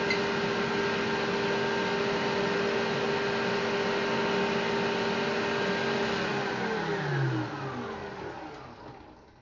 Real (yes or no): yes